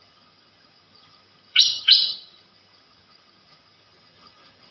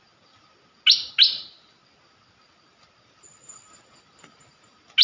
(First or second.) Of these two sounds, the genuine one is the second